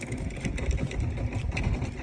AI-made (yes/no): no